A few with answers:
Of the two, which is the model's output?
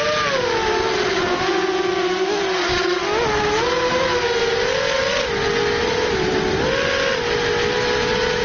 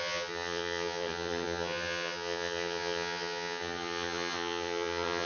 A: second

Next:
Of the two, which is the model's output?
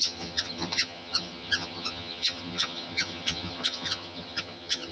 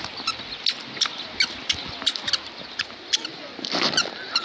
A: first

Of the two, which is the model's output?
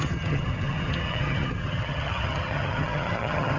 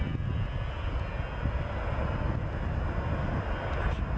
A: first